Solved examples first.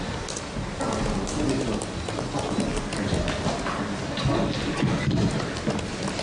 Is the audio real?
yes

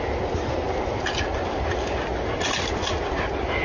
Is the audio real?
yes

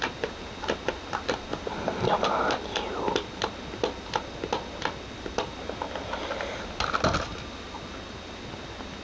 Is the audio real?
yes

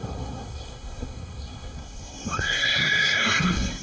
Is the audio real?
no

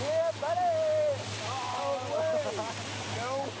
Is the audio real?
yes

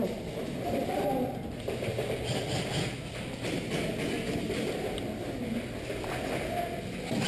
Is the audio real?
yes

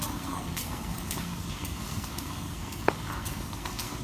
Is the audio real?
no